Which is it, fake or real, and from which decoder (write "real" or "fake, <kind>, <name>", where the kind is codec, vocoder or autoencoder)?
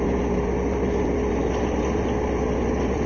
real